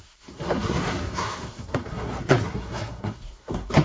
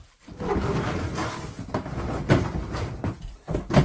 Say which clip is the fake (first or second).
first